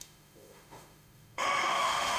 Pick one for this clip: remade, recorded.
remade